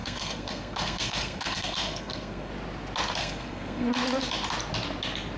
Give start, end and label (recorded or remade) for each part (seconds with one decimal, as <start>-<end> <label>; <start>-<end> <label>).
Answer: 0.0-2.5 remade; 2.5-3.2 recorded; 3.2-3.9 remade; 3.9-5.4 recorded